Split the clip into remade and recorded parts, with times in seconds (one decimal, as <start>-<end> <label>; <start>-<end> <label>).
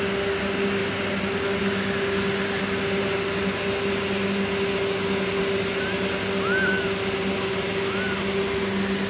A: 0.0-9.1 recorded